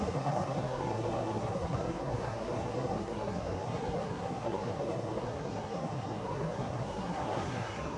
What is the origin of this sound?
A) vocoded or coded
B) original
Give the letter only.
A